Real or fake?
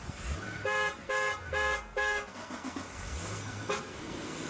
fake